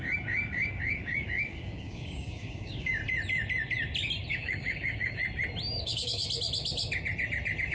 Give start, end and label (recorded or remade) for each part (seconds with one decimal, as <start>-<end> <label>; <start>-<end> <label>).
0.0-3.0 remade; 3.0-4.3 recorded; 4.3-5.2 remade; 5.2-5.8 recorded; 5.8-6.2 remade; 6.2-7.7 recorded